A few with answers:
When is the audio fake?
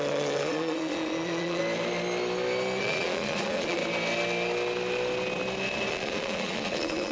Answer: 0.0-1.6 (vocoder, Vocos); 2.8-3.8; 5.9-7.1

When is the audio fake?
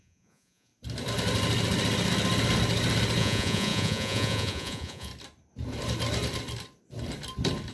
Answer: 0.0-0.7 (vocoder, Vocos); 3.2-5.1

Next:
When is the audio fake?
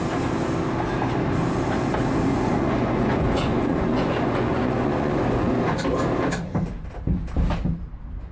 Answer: 2.3-5.5 (vocoder, Vocos)